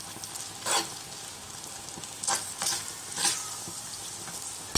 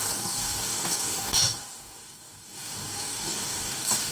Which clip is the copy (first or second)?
second